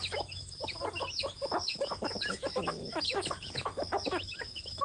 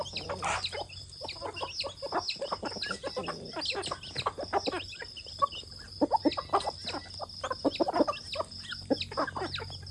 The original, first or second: second